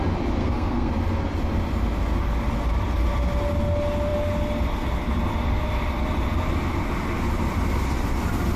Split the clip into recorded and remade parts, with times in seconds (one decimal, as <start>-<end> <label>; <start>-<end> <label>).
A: 0.0-0.4 recorded; 0.4-0.9 remade; 0.9-8.6 recorded